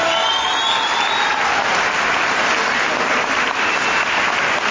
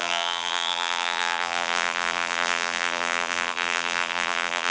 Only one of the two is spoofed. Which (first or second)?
second